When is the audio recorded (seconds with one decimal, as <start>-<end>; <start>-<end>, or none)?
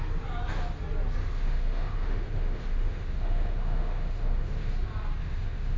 0.0-1.2; 4.7-5.2